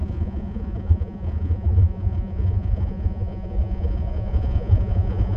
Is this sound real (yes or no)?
no